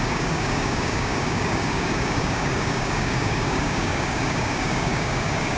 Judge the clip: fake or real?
fake